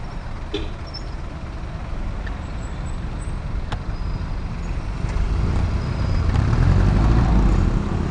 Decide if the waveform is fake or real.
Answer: real